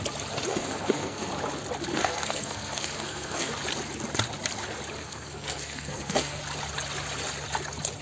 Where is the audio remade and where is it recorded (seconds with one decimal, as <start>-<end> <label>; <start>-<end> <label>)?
0.0-0.5 recorded; 0.5-1.3 remade; 1.3-1.9 recorded; 1.9-3.5 remade; 3.5-5.0 recorded; 5.0-6.4 remade; 6.4-8.0 recorded